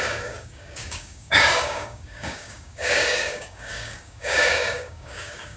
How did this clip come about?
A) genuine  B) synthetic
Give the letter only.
B